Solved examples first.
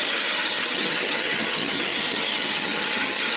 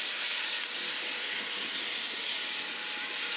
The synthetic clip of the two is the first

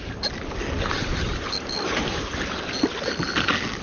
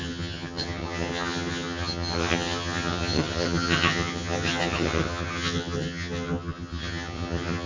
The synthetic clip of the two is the second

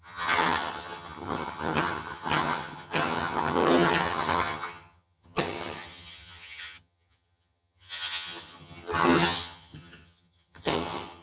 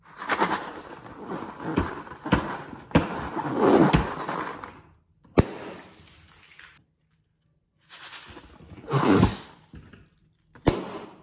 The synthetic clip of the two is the first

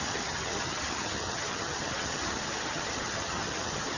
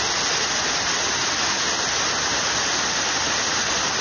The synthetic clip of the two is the first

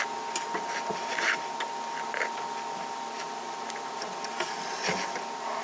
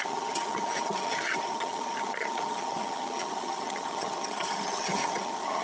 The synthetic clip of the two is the second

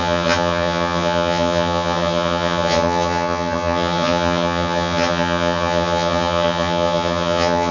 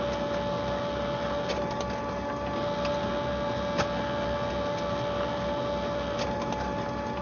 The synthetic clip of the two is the first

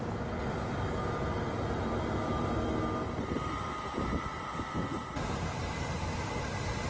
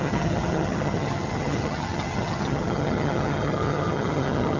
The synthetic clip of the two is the second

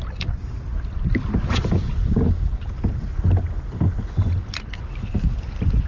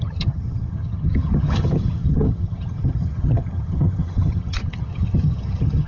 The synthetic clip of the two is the second